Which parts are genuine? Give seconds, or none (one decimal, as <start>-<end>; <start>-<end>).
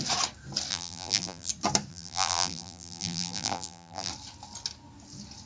0.0-0.7; 1.5-1.9; 4.1-5.5